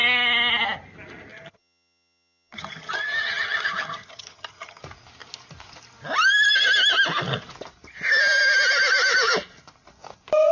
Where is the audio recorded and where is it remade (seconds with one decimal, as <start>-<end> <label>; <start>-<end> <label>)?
0.0-1.3 recorded; 1.3-4.8 remade; 4.8-10.5 recorded